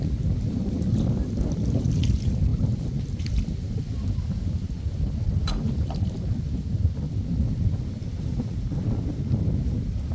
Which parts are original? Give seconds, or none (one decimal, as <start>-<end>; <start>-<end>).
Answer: 0.0-10.1